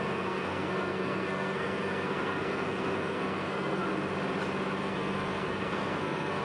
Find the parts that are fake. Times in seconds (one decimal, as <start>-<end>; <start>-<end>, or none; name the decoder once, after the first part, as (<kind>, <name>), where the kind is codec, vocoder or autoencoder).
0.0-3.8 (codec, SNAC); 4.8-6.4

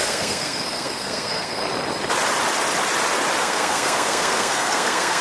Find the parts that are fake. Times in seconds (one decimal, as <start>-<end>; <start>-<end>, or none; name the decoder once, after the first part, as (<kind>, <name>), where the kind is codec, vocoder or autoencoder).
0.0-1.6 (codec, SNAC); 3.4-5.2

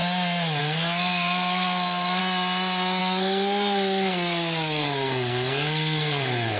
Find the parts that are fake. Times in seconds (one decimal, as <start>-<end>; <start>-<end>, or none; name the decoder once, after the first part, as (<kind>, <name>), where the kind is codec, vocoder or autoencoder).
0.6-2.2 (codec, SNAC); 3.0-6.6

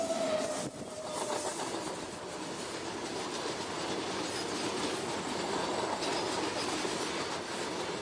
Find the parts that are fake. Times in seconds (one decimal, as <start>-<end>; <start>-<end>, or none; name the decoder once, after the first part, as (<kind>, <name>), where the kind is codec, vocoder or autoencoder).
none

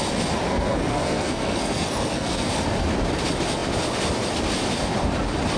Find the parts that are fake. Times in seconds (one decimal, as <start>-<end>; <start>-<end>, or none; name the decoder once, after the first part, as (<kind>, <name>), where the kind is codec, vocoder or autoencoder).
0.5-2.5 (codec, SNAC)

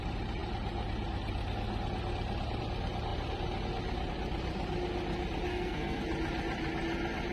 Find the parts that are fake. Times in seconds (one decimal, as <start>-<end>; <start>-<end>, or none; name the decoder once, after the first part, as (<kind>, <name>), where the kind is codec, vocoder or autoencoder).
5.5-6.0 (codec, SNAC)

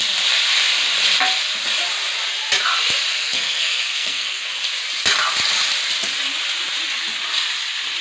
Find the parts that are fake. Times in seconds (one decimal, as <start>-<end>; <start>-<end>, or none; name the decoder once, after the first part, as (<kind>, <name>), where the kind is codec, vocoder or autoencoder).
3.1-4.5 (codec, SNAC)

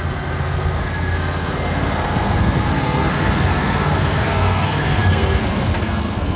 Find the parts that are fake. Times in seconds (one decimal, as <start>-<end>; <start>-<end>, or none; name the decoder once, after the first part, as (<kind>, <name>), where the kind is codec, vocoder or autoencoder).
0.0-6.4 (codec, SNAC)